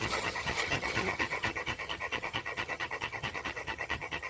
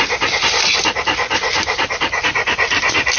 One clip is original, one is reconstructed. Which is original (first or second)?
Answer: second